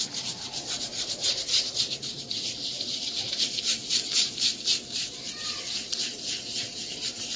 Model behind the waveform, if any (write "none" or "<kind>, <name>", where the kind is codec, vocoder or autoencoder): vocoder, BigVGAN v2